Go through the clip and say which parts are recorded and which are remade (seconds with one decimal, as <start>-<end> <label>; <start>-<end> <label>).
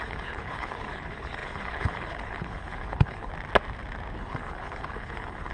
0.0-3.3 remade; 3.3-4.2 recorded; 4.2-5.5 remade